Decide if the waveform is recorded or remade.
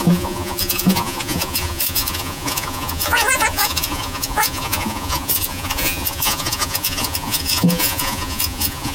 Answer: remade